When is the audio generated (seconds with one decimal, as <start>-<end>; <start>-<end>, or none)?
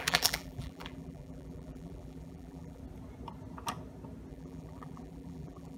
0.0-2.8; 4.3-5.8